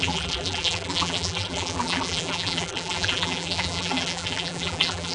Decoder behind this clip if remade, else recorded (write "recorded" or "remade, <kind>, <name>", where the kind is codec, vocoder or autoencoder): remade, vocoder, BigVGAN v2